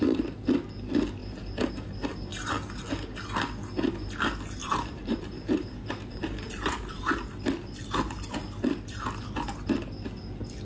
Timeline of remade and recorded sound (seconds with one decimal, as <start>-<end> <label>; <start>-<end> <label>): 0.0-2.3 recorded; 2.3-2.8 remade; 2.8-4.6 recorded; 4.6-7.0 remade; 7.0-7.8 recorded; 7.8-8.3 remade; 8.3-10.7 recorded